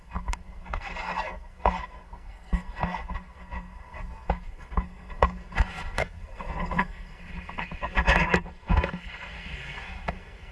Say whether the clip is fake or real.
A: fake